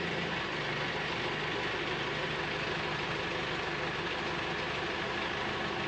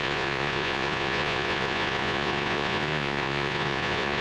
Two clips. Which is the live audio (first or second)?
first